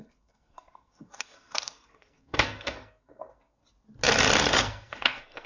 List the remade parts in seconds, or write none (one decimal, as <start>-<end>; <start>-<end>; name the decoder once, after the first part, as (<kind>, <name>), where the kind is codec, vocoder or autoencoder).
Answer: 0.0-3.6 (codec, SNAC); 4.6-5.5